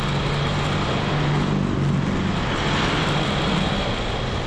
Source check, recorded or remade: recorded